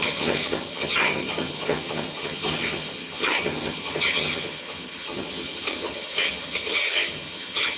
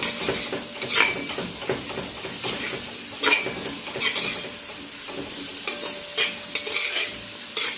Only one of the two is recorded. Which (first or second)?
second